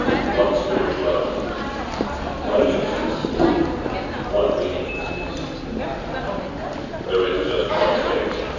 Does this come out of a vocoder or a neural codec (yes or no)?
no